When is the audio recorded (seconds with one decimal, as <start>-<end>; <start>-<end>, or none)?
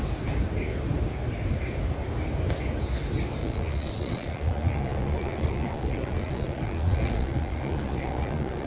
0.0-3.4